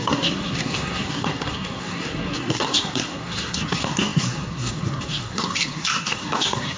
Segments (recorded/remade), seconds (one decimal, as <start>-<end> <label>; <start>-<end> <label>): 0.0-6.8 remade

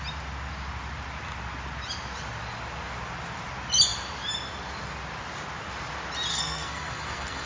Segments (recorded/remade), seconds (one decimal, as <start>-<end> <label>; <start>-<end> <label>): 0.0-6.3 recorded; 6.3-7.5 remade

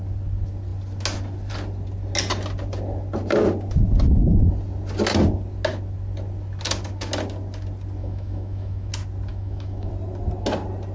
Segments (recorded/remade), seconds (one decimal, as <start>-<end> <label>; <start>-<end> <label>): 0.0-8.0 recorded; 8.0-8.9 remade; 8.9-9.3 recorded; 9.3-9.9 remade; 9.9-10.9 recorded

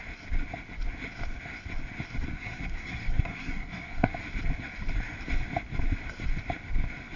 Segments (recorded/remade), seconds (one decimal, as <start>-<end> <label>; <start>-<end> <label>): 0.0-2.3 recorded; 2.3-4.1 remade; 4.1-7.2 recorded

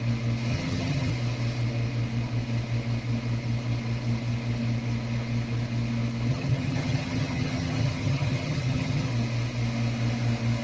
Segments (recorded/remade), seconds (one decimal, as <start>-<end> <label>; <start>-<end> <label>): 0.0-0.5 recorded; 0.5-1.1 remade; 1.1-6.3 recorded; 6.3-9.1 remade; 9.1-10.6 recorded

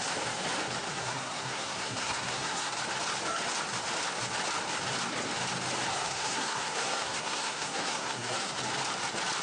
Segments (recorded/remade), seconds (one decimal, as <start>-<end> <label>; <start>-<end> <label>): 0.0-0.9 recorded; 0.9-2.7 remade; 2.7-5.9 recorded; 5.9-8.6 remade; 8.6-9.4 recorded